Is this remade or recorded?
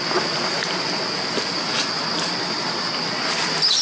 recorded